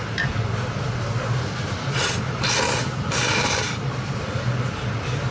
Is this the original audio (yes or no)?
yes